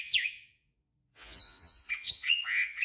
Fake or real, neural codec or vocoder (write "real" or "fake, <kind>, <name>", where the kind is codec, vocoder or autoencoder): fake, vocoder, Vocos